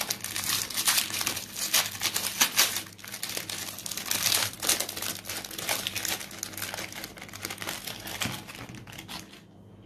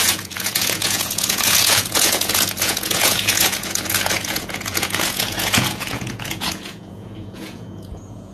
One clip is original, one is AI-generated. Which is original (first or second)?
first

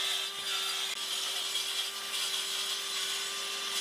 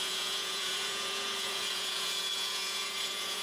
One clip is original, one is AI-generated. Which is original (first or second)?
first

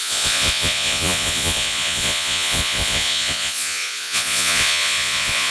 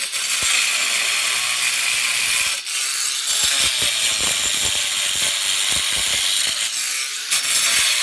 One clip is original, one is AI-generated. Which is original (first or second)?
second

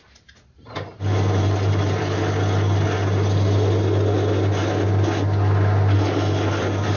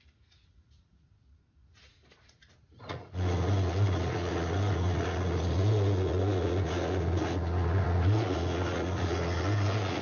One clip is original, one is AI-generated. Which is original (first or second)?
first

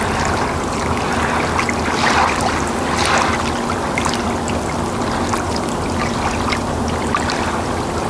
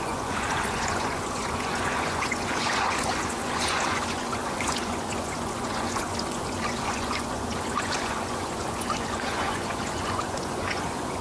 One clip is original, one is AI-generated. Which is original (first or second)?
first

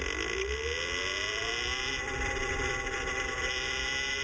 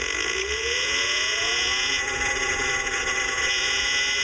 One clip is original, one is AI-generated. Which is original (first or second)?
first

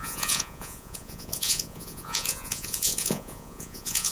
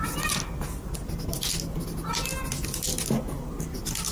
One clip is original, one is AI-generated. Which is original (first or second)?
second